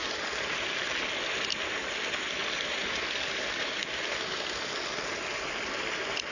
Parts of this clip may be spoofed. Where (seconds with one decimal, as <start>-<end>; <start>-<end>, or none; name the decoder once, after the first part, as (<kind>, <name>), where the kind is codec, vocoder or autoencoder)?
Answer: none